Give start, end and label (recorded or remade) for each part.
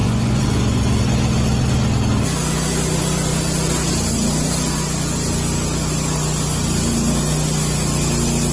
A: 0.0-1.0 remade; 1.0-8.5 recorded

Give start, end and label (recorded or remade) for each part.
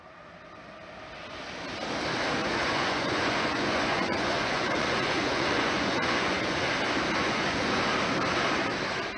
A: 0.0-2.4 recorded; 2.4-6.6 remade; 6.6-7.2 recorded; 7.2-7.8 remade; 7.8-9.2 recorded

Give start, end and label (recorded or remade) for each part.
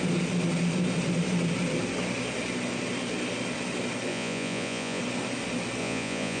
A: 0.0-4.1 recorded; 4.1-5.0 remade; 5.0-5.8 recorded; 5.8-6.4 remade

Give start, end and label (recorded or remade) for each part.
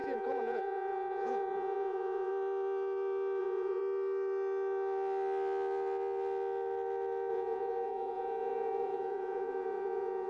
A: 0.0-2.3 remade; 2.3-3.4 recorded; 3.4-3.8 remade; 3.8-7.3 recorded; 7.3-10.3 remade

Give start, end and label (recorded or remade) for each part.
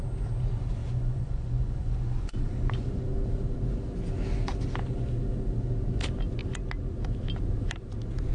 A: 0.0-0.8 recorded; 0.8-3.0 remade; 3.0-8.3 recorded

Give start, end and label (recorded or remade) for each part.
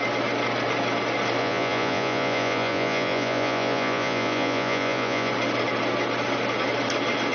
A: 0.0-1.4 recorded; 1.4-5.3 remade; 5.3-7.3 recorded